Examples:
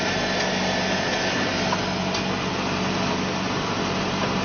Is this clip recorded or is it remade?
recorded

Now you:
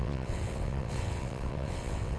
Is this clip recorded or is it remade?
remade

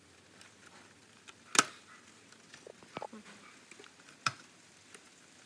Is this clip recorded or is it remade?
recorded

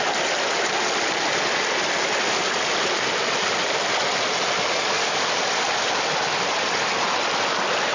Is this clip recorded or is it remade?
recorded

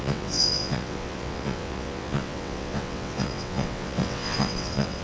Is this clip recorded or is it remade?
remade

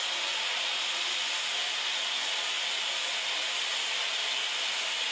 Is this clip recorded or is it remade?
recorded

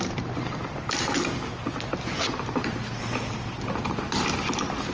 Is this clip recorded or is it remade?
recorded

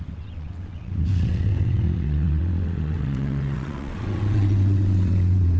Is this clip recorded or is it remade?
remade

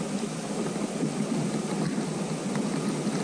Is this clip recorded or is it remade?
recorded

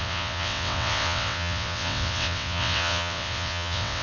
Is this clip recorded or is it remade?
remade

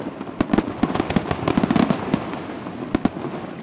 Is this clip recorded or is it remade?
recorded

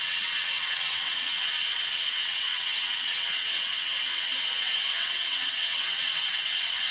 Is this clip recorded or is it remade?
remade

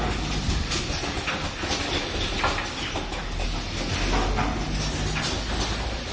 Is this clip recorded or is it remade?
recorded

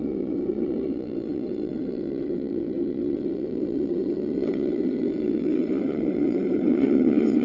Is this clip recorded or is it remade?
remade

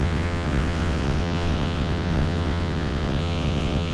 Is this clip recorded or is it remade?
remade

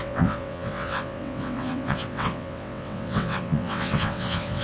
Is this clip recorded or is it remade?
remade